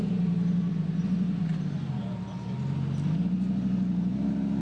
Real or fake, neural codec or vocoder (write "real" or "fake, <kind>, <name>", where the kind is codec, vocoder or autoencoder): real